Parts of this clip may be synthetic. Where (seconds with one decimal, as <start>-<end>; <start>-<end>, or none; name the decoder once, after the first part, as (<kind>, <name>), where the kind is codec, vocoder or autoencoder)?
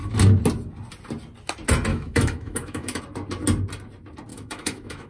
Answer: 1.9-3.0 (autoencoder, DAC-VAE); 4.3-5.1